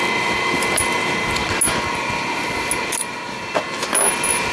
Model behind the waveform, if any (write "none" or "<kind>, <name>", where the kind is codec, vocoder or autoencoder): none